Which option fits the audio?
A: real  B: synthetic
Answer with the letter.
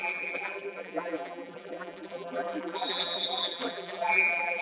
B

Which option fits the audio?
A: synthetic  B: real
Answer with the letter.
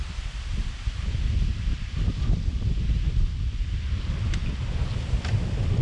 B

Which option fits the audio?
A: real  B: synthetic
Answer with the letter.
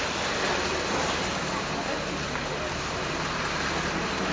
A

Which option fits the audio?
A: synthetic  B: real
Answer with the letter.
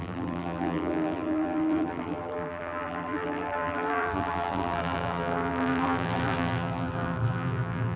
A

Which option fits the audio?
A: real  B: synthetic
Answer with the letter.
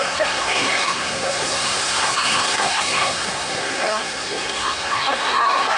B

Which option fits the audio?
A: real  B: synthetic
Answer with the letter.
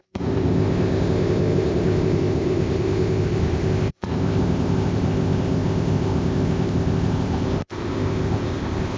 B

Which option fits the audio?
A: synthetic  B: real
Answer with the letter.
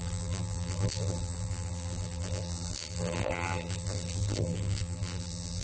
A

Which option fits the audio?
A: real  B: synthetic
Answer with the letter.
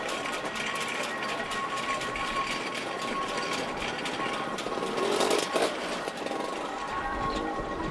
B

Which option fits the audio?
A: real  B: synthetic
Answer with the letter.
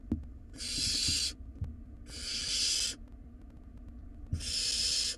A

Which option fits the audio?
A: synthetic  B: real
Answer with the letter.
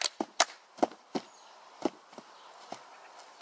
B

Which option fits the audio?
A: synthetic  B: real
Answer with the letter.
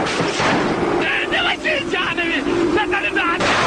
A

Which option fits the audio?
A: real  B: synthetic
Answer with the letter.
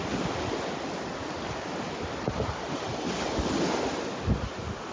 A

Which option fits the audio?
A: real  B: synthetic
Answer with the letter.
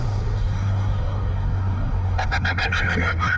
B